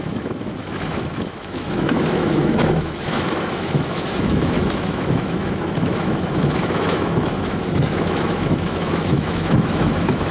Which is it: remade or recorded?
remade